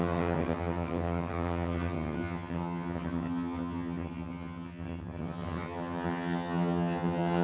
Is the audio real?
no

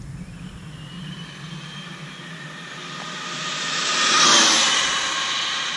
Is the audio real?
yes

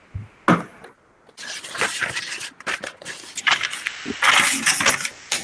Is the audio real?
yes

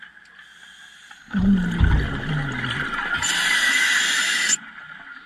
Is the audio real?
yes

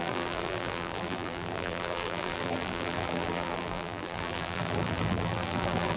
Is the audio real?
no